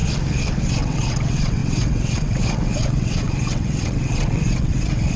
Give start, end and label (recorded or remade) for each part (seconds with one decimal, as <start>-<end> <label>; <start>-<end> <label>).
0.0-0.6 recorded; 0.6-5.2 remade